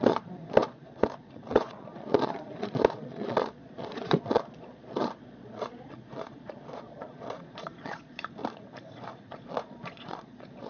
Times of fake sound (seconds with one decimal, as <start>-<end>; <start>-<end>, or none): 0.0-8.4; 9.3-10.7